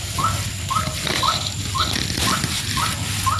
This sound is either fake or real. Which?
real